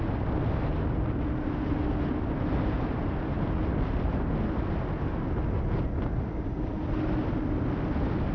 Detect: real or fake real